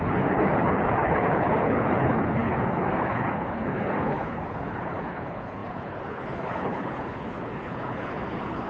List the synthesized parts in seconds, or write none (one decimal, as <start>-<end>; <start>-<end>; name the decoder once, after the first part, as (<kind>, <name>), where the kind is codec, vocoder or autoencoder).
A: 0.0-8.7 (codec, HILCodec)